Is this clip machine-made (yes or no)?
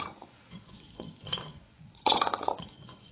yes